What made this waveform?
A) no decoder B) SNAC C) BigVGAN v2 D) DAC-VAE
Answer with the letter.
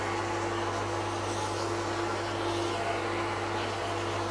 A